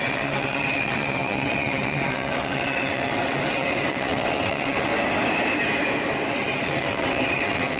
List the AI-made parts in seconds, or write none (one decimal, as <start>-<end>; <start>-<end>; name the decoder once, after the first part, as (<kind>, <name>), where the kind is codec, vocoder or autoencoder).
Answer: 0.0-4.9 (vocoder, WaveNeXt); 6.3-7.8